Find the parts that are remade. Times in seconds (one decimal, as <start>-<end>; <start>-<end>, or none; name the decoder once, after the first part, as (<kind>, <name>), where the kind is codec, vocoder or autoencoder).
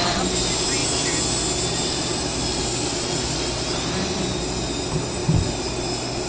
none